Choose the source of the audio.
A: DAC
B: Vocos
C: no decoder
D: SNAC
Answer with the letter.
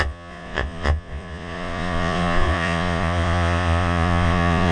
B